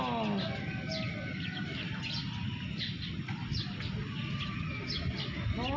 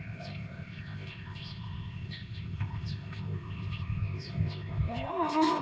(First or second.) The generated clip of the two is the second